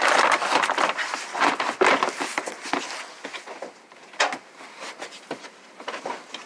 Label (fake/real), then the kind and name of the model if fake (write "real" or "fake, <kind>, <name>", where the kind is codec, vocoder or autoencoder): real